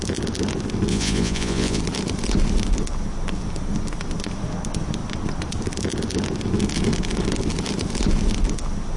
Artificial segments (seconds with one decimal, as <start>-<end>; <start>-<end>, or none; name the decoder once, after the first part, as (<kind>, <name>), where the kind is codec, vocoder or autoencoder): 0.9-1.8 (vocoder, Vocos)